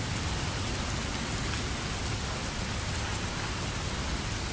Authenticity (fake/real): real